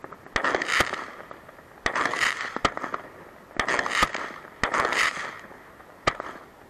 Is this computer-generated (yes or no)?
no